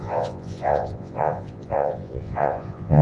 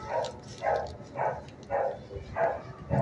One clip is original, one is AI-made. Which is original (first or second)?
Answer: second